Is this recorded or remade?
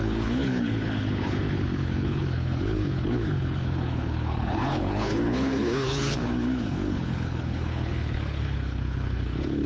remade